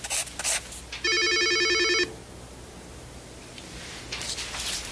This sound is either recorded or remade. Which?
recorded